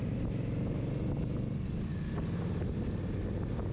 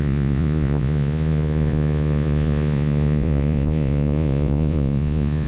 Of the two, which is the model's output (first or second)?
second